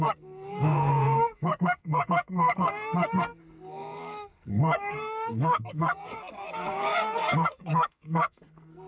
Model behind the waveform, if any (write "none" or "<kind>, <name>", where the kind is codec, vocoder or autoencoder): codec, SNAC